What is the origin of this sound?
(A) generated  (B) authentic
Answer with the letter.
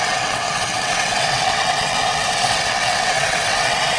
A